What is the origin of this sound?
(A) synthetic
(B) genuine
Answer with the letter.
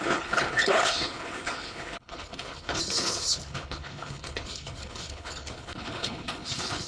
A